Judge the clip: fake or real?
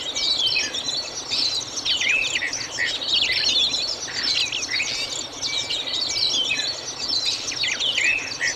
real